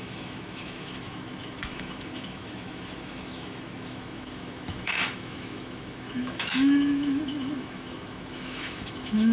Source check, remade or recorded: remade